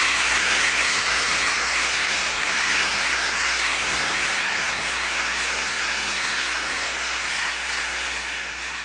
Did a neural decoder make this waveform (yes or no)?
yes